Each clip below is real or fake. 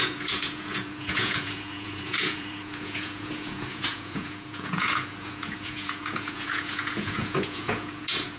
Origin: fake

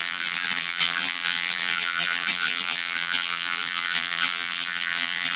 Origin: fake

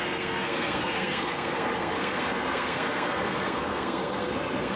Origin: fake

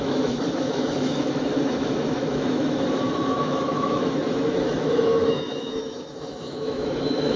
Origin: fake